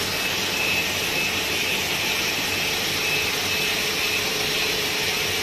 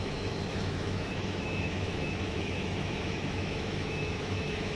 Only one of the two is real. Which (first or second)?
first